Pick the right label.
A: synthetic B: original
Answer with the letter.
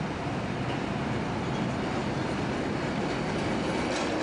B